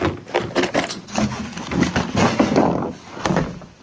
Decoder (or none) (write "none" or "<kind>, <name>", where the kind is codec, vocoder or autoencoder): none